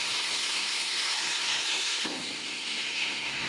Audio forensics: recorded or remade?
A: remade